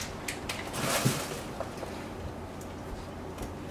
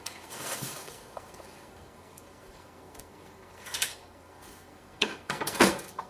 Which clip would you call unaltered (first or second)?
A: first